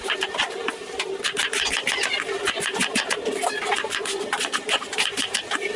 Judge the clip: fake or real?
real